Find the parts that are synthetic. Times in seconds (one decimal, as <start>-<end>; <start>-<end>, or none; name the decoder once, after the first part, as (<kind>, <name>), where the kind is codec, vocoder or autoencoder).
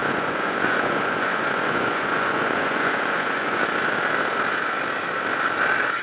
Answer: 0.0-3.6 (vocoder, Vocos)